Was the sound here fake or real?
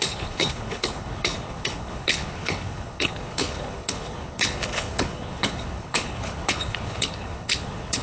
fake